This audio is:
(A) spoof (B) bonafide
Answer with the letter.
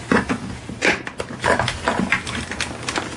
B